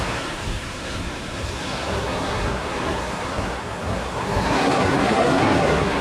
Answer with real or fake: fake